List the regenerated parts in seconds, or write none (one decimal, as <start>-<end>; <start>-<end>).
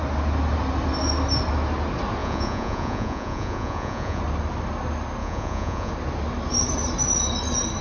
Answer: 2.2-4.2; 5.2-5.9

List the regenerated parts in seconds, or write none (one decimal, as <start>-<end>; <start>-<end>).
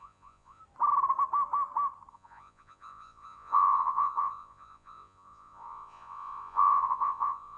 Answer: 0.0-0.6; 2.1-7.6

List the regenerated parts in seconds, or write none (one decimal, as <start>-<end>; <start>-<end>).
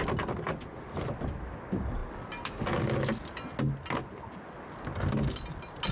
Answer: none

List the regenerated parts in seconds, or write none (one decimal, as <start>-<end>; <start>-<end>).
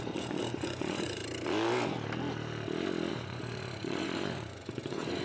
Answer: 0.0-1.2; 3.1-5.2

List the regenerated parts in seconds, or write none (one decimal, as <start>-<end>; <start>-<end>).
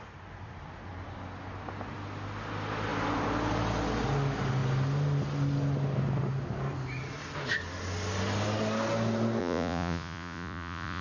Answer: 9.4-11.0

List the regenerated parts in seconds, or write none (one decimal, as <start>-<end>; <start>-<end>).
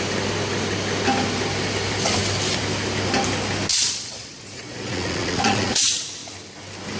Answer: 3.7-5.8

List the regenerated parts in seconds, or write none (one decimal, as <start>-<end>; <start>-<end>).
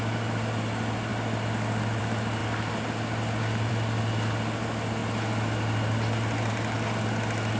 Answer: none